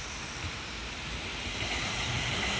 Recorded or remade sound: recorded